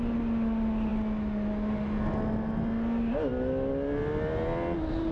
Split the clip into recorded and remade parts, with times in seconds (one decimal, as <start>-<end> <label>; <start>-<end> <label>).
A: 0.0-5.1 recorded